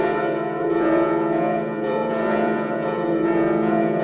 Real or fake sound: fake